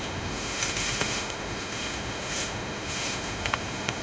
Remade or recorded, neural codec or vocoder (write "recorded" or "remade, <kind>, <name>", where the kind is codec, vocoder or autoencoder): remade, autoencoder, DAC-VAE